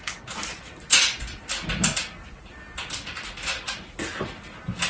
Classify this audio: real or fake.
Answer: real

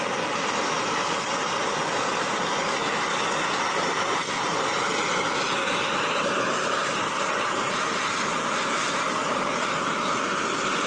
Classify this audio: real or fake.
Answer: real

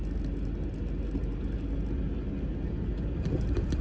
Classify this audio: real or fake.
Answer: real